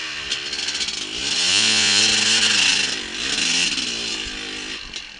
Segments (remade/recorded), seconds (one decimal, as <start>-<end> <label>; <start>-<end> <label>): 0.0-1.5 recorded; 1.5-2.0 remade; 2.0-5.2 recorded